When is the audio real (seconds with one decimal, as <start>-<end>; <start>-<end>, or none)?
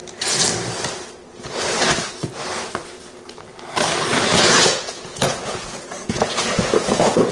0.0-4.4